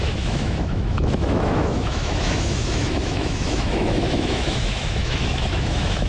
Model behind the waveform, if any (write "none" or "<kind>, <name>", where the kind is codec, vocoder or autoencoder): autoencoder, DAC-VAE